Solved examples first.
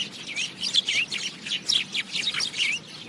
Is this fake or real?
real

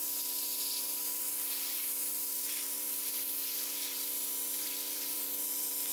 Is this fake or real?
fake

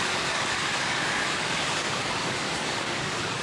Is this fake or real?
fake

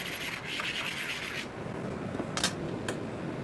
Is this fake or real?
real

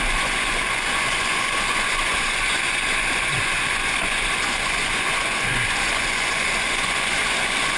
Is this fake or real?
fake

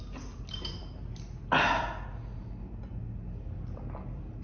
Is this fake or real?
real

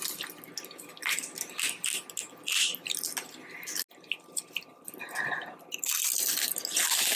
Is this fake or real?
real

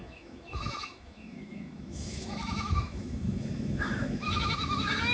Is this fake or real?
fake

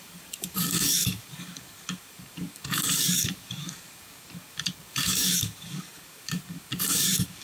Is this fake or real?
fake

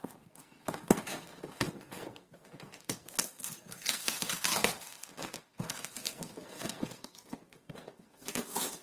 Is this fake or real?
fake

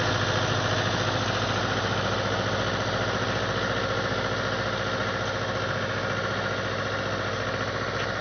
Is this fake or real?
real